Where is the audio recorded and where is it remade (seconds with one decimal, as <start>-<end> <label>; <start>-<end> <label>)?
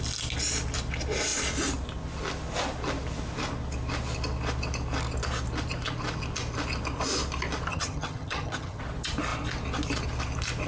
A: 0.0-7.7 recorded; 7.7-8.8 remade; 8.8-10.7 recorded